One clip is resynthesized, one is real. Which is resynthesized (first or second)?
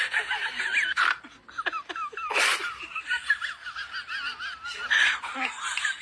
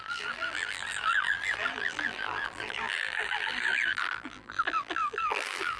second